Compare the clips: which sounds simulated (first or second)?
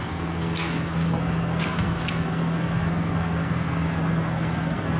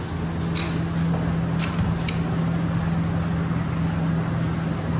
first